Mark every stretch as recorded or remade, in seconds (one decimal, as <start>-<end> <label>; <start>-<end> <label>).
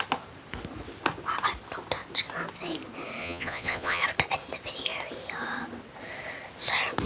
0.0-3.2 recorded; 3.2-4.0 remade; 4.0-7.1 recorded